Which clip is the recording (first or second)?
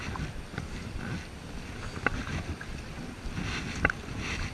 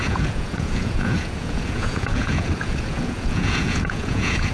first